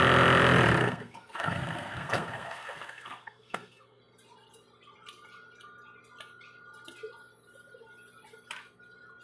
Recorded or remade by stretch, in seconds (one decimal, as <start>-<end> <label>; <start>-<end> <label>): 0.0-0.8 recorded; 0.8-4.0 remade; 4.0-9.2 recorded